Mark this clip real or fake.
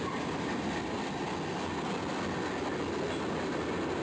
real